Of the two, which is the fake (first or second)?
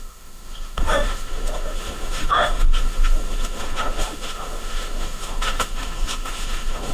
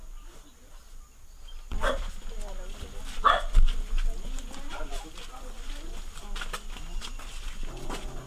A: first